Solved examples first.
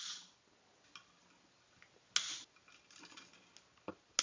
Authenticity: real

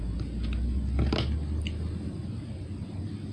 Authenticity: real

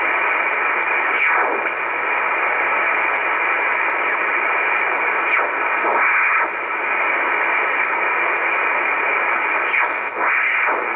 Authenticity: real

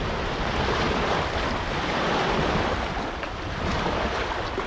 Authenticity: real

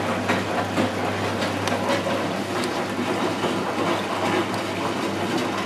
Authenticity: real